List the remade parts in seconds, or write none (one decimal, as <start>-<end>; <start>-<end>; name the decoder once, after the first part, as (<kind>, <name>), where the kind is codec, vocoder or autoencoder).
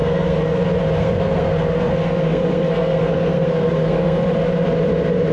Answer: 0.0-0.6 (codec, SNAC); 1.0-4.2